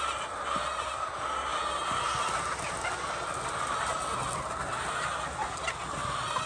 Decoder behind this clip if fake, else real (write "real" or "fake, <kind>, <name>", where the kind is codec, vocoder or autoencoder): real